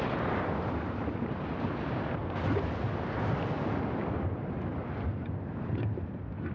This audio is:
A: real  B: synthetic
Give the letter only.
A